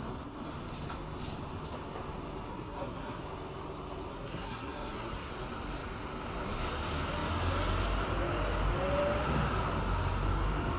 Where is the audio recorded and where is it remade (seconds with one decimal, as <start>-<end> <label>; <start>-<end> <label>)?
0.0-2.5 recorded; 2.5-3.2 remade; 3.2-4.1 recorded; 4.1-5.3 remade; 5.3-10.8 recorded